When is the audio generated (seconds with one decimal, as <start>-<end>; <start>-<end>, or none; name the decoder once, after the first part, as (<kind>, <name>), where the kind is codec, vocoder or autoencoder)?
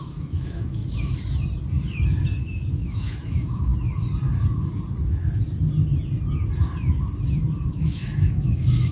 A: 0.0-0.8 (autoencoder, DAC-VAE); 2.7-3.7; 7.7-8.9